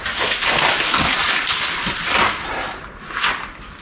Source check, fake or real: real